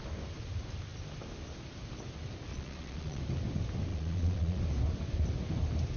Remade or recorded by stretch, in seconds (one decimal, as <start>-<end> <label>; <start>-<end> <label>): 0.0-2.5 recorded; 2.5-3.2 remade; 3.2-3.9 recorded; 3.9-4.6 remade; 4.6-6.0 recorded